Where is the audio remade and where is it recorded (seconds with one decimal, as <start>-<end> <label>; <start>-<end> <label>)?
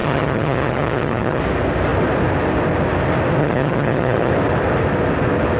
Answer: 0.0-1.4 remade; 1.4-3.4 recorded; 3.4-4.3 remade; 4.3-5.6 recorded